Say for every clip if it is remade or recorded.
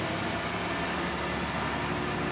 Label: recorded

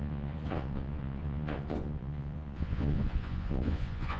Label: remade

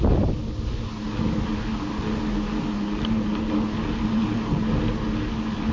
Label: recorded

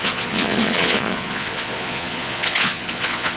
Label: remade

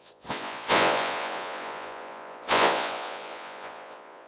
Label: remade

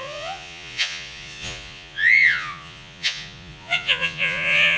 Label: remade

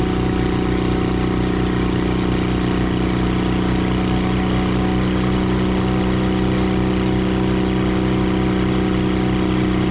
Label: recorded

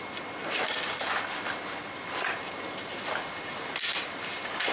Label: recorded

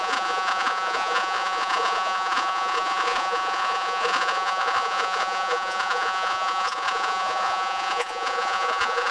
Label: remade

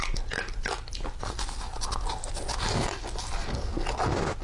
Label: recorded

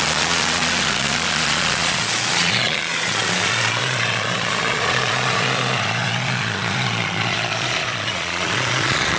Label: remade